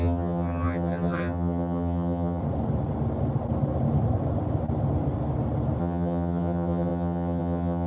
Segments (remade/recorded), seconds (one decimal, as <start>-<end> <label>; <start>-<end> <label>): 0.0-2.4 remade; 2.4-5.8 recorded; 5.8-7.9 remade